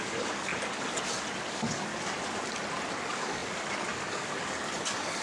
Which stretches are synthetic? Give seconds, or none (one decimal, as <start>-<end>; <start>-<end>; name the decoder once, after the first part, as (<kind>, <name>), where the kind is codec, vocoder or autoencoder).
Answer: 0.0-0.5 (codec, DAC); 1.5-1.9; 3.0-5.2